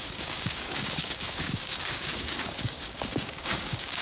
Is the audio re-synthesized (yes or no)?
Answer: yes